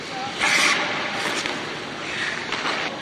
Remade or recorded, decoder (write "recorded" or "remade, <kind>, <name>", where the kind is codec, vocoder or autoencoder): recorded